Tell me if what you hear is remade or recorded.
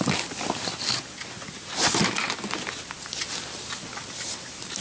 recorded